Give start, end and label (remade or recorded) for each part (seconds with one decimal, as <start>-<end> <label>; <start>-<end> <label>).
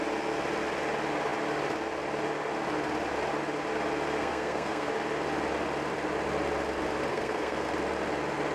0.0-4.2 recorded; 4.2-4.9 remade; 4.9-7.1 recorded; 7.1-7.7 remade; 7.7-8.5 recorded